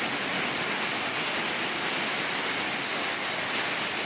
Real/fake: real